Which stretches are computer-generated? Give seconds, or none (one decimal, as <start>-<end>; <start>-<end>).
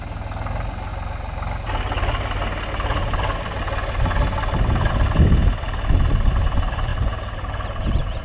6.9-8.2